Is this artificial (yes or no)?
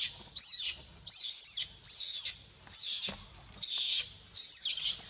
no